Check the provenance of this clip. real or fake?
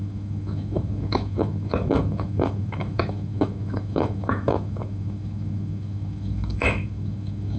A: fake